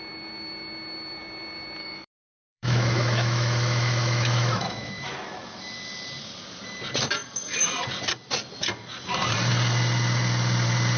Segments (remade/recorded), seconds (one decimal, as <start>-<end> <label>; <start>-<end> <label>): 0.0-1.8 recorded; 1.8-5.1 remade; 5.1-11.0 recorded